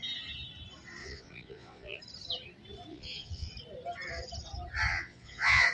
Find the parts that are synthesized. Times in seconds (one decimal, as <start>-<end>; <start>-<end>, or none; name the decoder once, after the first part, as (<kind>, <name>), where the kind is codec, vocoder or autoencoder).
1.0-2.0 (vocoder, Vocos); 2.9-3.5; 4.9-5.7